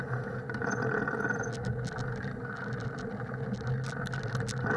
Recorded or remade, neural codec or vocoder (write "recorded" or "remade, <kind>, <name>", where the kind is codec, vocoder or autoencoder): recorded